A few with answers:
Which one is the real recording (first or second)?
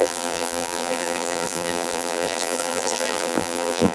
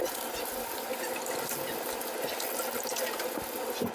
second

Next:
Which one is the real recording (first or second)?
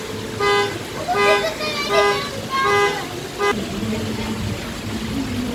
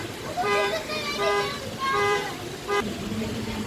first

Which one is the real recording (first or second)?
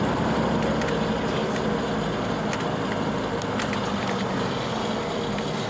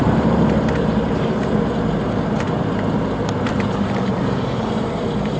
first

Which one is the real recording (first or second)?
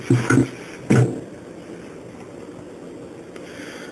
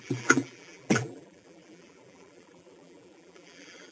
first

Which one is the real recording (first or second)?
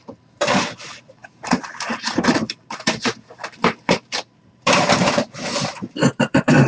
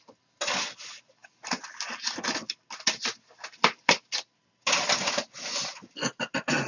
second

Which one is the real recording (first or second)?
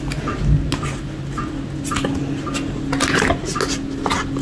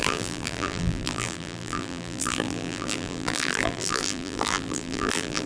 first